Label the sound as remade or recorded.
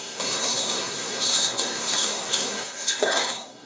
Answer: remade